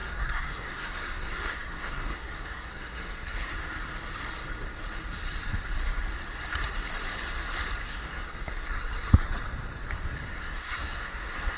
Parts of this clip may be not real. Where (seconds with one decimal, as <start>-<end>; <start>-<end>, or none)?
0.0-3.5; 7.9-9.1; 10.3-11.6